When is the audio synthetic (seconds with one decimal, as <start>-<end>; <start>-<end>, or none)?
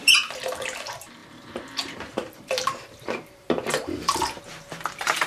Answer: 0.0-5.3